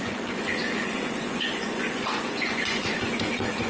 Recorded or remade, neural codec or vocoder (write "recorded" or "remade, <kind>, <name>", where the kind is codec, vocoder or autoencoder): remade, vocoder, Vocos